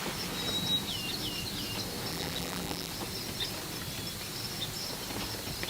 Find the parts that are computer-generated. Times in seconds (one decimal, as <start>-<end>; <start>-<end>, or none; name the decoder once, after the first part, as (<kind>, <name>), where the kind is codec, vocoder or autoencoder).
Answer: 2.1-2.9 (vocoder, BigVGAN v2)